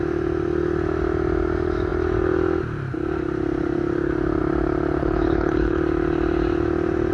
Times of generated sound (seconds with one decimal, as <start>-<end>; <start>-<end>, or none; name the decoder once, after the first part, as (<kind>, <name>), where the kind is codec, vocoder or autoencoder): 5.0-5.8 (codec, HILCodec)